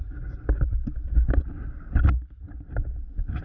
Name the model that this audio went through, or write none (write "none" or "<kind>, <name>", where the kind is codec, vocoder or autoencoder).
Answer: none